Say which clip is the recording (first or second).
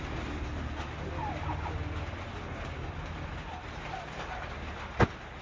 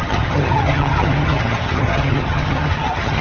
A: first